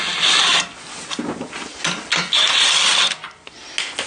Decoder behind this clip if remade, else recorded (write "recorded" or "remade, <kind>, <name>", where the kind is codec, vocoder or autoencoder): recorded